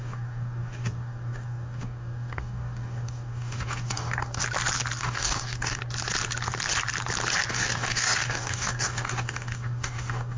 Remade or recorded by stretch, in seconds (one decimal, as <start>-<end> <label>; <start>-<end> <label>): 0.0-4.4 remade; 4.4-5.0 recorded; 5.0-5.8 remade; 5.8-7.5 recorded; 7.5-10.4 remade